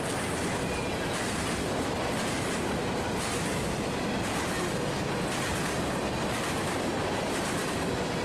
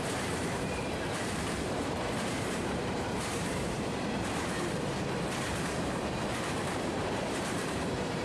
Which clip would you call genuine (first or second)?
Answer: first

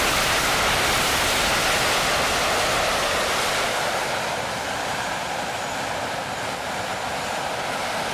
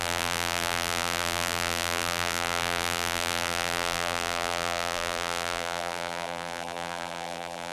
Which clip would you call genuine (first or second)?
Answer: first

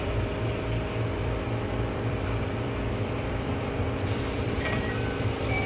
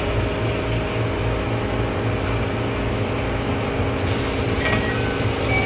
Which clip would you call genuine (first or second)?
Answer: second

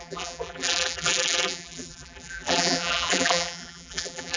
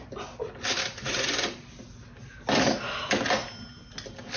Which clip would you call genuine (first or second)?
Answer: second